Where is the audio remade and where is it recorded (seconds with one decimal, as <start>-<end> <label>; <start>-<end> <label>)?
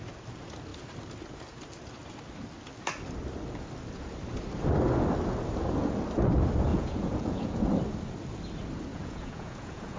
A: 0.0-6.7 recorded; 6.7-7.7 remade; 7.7-8.9 recorded; 8.9-10.0 remade